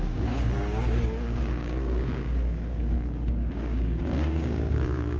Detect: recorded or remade remade